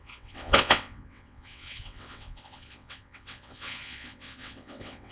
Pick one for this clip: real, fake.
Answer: fake